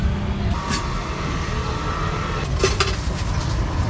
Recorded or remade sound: recorded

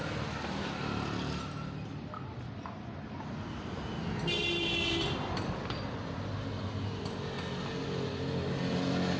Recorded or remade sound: recorded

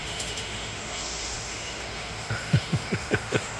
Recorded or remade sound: remade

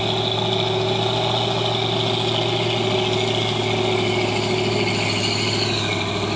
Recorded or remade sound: recorded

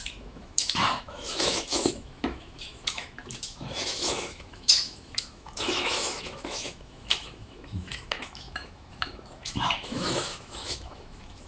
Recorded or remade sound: remade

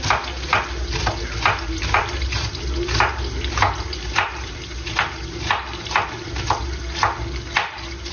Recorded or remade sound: recorded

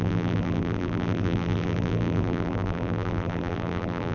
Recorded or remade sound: remade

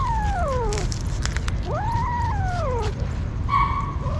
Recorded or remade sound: recorded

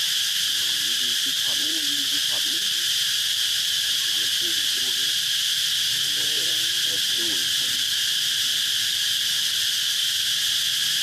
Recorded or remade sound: remade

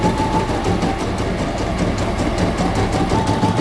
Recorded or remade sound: recorded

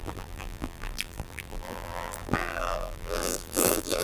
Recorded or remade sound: remade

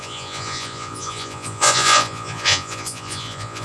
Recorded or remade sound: remade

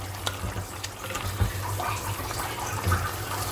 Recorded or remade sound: recorded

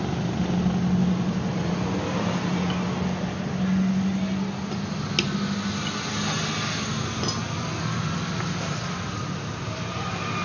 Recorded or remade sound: recorded